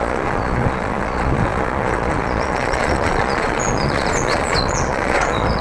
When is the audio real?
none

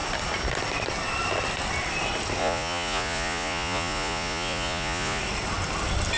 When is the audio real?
0.0-2.4; 5.2-6.2

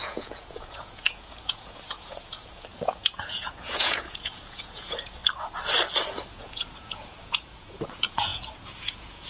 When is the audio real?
5.2-6.3